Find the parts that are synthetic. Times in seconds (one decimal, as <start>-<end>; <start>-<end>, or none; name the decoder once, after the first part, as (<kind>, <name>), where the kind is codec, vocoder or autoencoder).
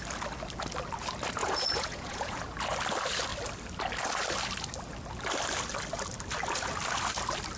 1.4-2.4 (vocoder, Vocos)